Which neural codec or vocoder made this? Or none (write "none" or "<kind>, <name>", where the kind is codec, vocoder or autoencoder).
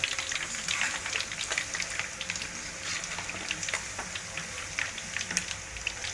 none